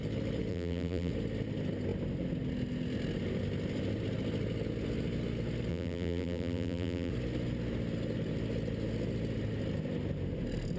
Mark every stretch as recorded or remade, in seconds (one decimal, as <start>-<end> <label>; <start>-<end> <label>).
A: 0.0-0.5 recorded; 0.5-1.1 remade; 1.1-5.7 recorded; 5.7-7.1 remade; 7.1-10.8 recorded

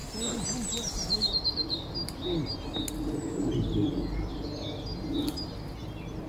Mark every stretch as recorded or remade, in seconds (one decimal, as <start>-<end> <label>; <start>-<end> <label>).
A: 0.0-6.3 recorded

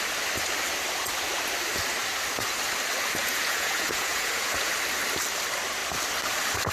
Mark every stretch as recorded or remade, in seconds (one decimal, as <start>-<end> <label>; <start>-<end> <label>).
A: 0.0-3.2 recorded; 3.2-4.7 remade; 4.7-6.7 recorded

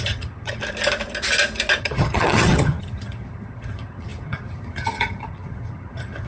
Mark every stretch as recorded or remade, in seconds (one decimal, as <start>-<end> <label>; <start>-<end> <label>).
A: 0.0-0.6 remade; 0.6-1.8 recorded; 1.8-6.3 remade

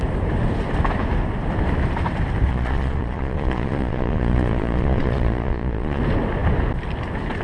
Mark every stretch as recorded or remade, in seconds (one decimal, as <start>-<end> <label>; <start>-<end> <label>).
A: 0.0-2.5 recorded; 2.5-6.0 remade; 6.0-7.4 recorded

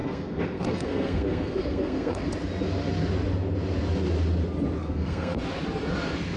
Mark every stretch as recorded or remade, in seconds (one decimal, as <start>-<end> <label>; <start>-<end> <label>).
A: 0.0-2.3 remade; 2.3-4.8 recorded; 4.8-5.4 remade; 5.4-6.4 recorded

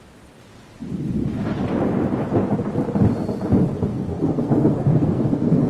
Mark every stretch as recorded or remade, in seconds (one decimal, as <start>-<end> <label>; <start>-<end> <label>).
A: 0.0-3.9 recorded; 3.9-5.7 remade